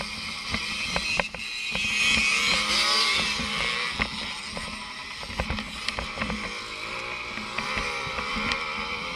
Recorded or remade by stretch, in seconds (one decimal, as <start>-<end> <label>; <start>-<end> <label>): 0.0-9.2 recorded